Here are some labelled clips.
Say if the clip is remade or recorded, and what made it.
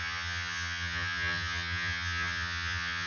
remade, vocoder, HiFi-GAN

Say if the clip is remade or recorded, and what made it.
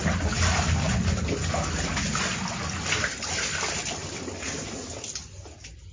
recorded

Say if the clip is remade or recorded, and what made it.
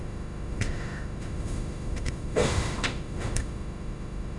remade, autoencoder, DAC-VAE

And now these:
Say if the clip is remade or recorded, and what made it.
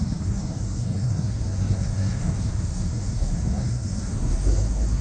remade, codec, SNAC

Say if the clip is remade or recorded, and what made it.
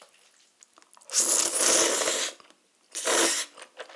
recorded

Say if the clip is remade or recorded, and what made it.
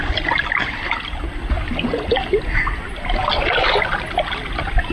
recorded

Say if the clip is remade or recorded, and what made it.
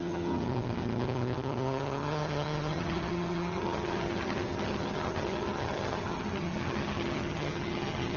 remade, vocoder, HiFi-GAN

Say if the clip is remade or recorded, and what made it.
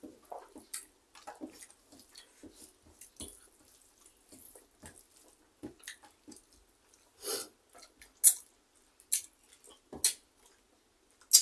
recorded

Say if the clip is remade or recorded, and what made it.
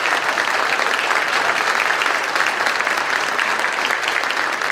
recorded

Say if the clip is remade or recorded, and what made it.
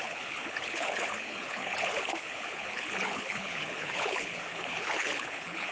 remade, codec, HILCodec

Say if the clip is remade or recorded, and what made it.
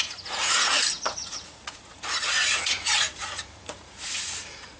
remade, vocoder, Vocos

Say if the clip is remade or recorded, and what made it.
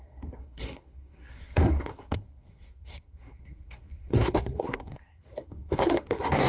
remade, codec, SNAC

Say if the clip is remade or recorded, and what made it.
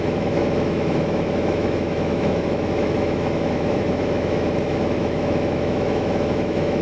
remade, autoencoder, DAC-VAE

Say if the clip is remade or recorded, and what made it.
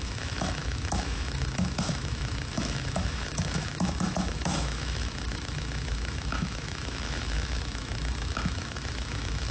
remade, autoencoder, DAC-VAE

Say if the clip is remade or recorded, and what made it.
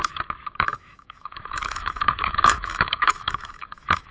remade, autoencoder, DAC-VAE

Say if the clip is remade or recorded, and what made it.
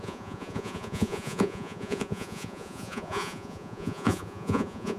remade, vocoder, Vocos